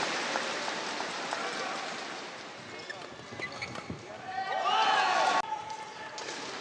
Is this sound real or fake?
real